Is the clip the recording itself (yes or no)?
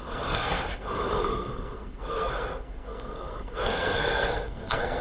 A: no